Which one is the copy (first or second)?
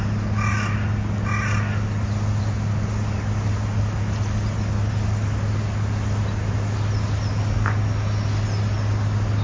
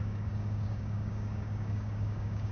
second